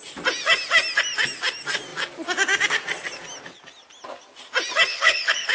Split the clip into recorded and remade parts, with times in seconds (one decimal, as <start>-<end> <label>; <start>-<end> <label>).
0.0-4.9 recorded; 4.9-5.5 remade